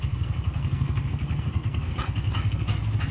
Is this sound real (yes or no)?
no